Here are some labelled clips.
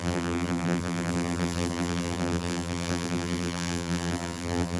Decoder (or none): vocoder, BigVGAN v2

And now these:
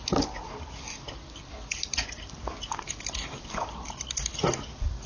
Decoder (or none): none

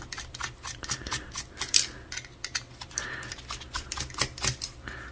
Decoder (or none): none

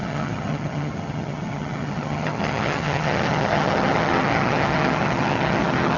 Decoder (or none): vocoder, HiFi-GAN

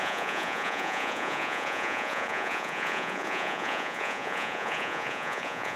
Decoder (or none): vocoder, Vocos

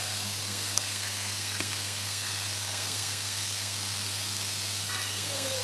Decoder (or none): codec, SNAC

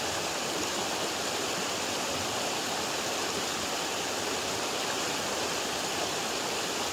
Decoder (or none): none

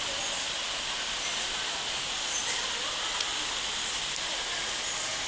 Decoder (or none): none